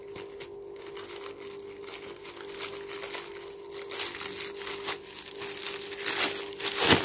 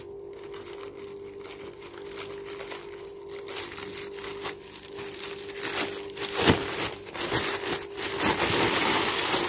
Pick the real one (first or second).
first